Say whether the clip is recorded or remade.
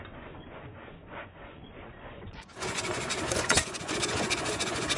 remade